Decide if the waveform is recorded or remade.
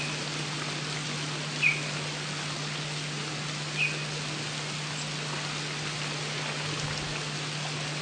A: recorded